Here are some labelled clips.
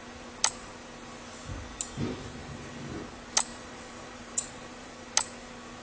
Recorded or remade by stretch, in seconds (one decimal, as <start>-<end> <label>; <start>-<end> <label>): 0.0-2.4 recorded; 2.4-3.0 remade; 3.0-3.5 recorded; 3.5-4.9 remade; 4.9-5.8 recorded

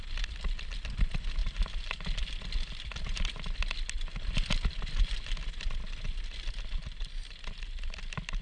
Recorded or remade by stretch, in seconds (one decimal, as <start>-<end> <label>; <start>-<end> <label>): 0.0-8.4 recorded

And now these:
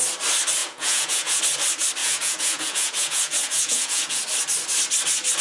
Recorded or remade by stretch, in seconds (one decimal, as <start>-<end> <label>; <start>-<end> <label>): 0.0-0.6 recorded; 0.6-1.4 remade; 1.4-2.0 recorded; 2.0-4.2 remade; 4.2-5.4 recorded

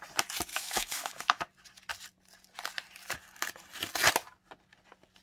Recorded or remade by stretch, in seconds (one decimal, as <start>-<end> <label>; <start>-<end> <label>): 0.0-0.5 recorded; 0.5-1.4 remade; 1.4-5.2 recorded

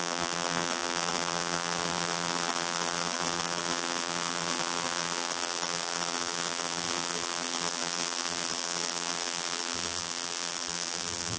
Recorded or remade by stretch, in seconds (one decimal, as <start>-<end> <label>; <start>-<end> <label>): 0.0-11.4 remade

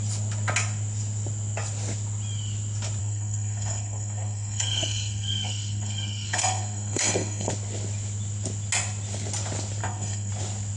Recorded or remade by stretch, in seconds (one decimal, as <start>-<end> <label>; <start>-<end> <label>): 0.0-3.0 recorded; 3.0-7.5 remade; 7.5-9.8 recorded; 9.8-10.3 remade; 10.3-10.8 recorded

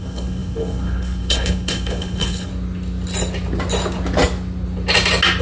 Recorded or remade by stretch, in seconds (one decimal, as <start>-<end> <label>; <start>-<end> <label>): 0.0-2.5 remade; 2.5-5.4 recorded

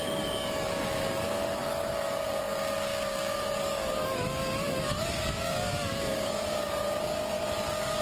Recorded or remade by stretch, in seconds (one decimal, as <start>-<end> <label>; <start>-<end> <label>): 0.0-8.0 remade